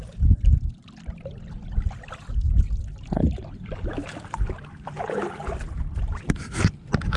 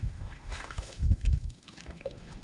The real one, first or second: first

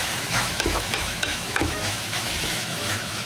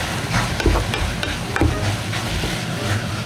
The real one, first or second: second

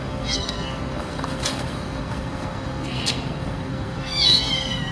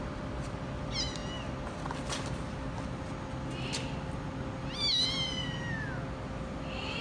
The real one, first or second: second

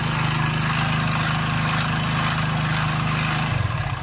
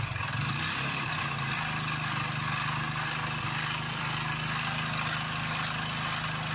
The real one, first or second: first